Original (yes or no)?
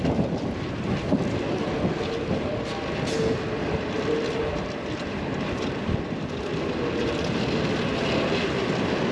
yes